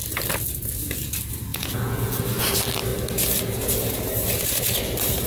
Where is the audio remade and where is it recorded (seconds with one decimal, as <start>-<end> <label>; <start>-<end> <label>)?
0.0-1.5 recorded; 1.5-2.2 remade; 2.2-5.3 recorded